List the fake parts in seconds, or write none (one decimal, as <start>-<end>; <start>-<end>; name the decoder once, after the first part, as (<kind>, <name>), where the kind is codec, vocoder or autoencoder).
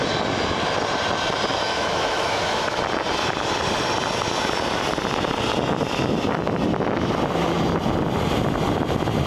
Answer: 1.5-2.8 (autoencoder, DAC-VAE)